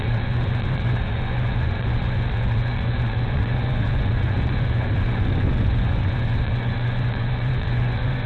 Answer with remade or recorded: remade